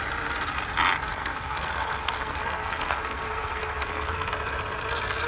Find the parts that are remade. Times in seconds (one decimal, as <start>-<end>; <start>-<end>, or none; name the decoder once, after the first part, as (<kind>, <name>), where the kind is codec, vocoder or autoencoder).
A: 1.1-4.3 (codec, SNAC)